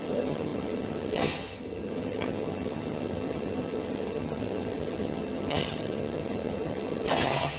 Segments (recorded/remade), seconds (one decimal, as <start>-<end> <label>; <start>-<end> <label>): 0.0-7.6 remade